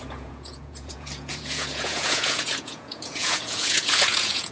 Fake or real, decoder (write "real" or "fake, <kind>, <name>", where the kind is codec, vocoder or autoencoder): fake, vocoder, Vocos